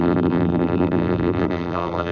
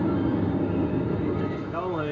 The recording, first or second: second